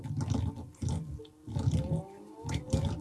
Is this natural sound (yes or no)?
yes